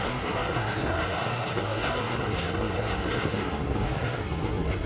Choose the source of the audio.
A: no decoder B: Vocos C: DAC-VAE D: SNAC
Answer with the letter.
D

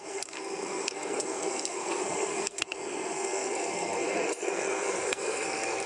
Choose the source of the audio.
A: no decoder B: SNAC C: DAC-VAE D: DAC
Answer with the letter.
B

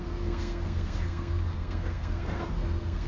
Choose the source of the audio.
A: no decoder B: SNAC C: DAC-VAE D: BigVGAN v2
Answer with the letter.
B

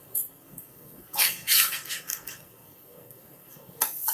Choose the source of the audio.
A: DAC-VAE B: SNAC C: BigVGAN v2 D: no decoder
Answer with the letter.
B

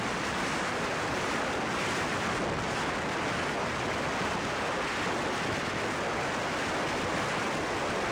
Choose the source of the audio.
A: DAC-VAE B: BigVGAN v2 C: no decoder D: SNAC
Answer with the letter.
C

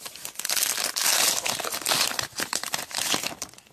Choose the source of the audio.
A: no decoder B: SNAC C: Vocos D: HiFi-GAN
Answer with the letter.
A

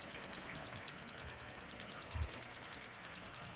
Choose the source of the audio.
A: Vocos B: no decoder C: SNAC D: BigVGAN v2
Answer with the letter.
C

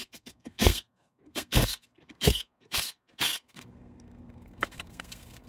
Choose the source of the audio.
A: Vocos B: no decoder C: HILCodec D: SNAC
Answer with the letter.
D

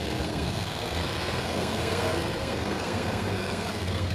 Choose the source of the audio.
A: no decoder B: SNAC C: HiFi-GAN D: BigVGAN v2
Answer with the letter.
B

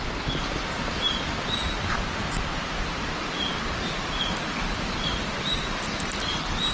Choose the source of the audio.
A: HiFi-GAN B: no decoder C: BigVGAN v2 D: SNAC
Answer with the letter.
B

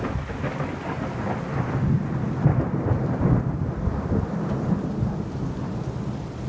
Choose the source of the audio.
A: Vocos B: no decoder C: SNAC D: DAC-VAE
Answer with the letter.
B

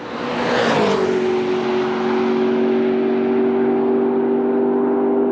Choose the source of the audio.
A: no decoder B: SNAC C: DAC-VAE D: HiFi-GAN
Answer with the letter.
A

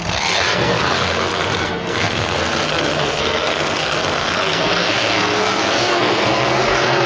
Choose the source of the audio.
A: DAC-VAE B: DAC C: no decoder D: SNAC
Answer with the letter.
D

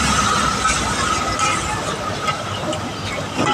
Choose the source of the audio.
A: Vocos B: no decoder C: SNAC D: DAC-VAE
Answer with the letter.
B